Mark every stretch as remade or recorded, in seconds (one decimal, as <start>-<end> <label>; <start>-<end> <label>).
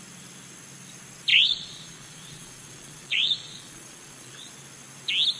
0.0-1.3 recorded; 1.3-4.5 remade; 4.5-5.4 recorded